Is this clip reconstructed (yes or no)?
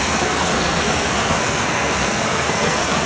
yes